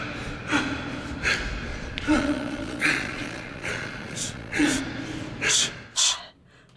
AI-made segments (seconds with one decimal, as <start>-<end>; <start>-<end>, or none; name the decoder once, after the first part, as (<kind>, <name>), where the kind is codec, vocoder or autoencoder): 1.7-4.8 (vocoder, Vocos)